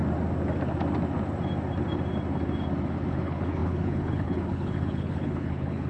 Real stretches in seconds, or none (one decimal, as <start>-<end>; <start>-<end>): 0.0-3.1